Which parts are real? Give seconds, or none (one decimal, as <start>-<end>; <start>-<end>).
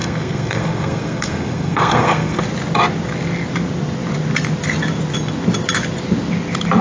2.4-6.8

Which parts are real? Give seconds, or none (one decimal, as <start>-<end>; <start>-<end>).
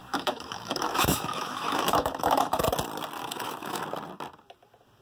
2.6-3.2; 3.8-5.0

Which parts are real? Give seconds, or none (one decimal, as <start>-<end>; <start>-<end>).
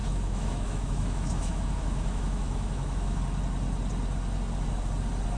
3.2-5.4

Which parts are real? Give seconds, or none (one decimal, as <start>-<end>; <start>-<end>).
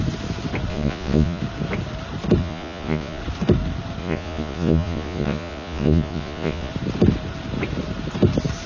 0.0-0.7; 1.4-2.4; 3.2-4.0; 6.7-8.7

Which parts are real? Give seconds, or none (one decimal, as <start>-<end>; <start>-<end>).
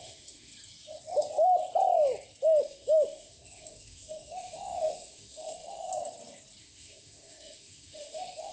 0.5-2.6; 5.9-6.6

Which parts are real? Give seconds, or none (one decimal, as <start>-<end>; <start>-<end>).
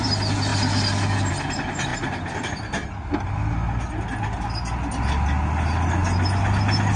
0.0-7.0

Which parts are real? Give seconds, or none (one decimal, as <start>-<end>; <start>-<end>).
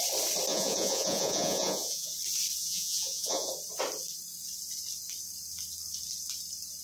0.0-0.5; 2.1-2.6; 3.5-6.8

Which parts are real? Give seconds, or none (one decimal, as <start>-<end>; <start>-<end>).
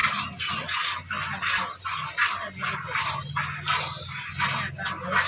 0.0-5.3